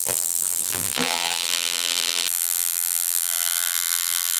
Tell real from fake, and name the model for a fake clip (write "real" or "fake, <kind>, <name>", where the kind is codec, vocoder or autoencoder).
fake, vocoder, BigVGAN v2